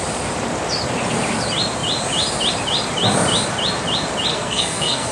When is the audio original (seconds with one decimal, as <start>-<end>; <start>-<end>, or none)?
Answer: 0.0-4.3